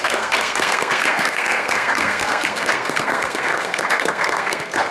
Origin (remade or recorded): remade